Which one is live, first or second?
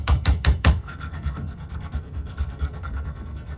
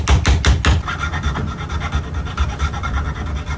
second